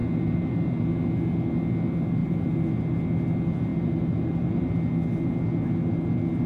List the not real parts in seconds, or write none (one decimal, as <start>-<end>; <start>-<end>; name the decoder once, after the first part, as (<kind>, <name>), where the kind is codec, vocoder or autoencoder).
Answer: 0.0-0.8 (vocoder, BigVGAN v2); 2.2-3.0; 3.7-4.7